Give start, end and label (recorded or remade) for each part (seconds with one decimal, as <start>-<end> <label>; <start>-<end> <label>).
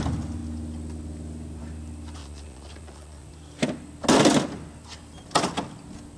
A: 0.0-2.2 recorded; 2.2-3.3 remade; 3.3-6.2 recorded